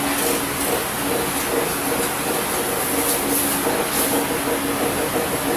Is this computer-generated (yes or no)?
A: no